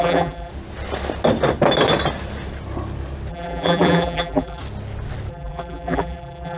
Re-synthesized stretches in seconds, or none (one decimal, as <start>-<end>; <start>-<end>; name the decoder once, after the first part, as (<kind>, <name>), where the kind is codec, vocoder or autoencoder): 0.0-0.5 (vocoder, BigVGAN v2); 3.3-4.6; 5.3-6.6